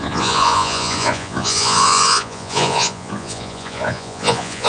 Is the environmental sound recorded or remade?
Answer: remade